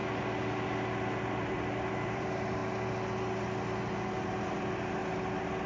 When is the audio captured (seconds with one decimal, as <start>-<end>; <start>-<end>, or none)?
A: 0.0-1.9; 2.6-4.6